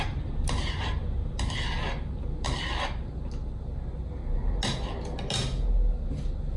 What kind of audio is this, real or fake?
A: real